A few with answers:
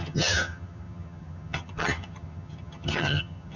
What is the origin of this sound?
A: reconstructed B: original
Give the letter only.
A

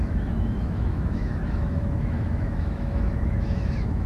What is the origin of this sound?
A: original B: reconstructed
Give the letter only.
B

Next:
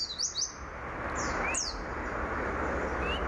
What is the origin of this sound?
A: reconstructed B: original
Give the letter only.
B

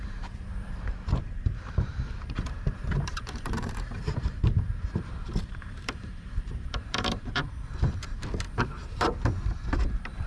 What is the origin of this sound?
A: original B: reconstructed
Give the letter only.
B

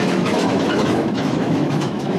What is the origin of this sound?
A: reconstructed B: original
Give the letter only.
A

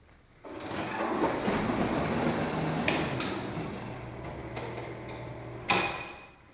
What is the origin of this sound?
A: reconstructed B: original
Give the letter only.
B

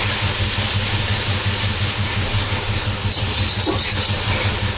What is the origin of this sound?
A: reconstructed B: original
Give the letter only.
B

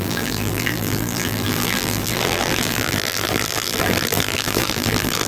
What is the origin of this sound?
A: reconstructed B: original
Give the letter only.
A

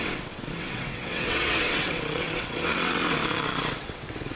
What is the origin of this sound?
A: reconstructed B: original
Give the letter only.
A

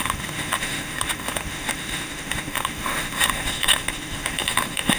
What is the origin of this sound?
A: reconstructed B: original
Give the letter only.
A